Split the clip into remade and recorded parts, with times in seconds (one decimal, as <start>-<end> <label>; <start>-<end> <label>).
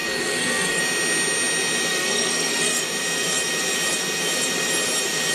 0.0-0.8 remade; 0.8-1.9 recorded; 1.9-2.8 remade; 2.8-5.3 recorded